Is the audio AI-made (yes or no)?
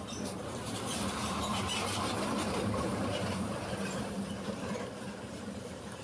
yes